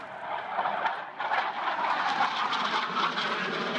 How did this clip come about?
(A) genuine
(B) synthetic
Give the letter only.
A